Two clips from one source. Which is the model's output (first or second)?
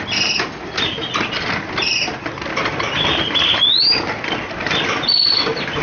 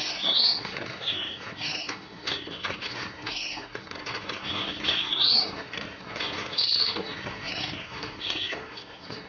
second